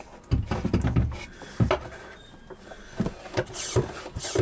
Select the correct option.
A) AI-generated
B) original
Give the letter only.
B